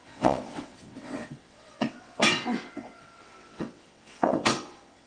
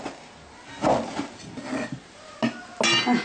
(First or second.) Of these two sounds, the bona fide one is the second